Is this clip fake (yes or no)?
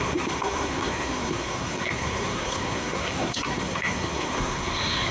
yes